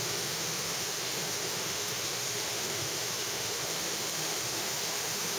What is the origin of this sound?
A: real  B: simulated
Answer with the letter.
B